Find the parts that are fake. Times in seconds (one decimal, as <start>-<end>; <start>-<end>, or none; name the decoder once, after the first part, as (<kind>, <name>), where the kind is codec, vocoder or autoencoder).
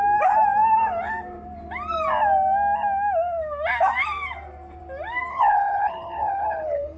5.3-7.0 (codec, HILCodec)